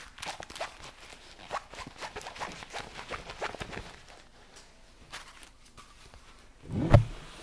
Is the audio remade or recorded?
recorded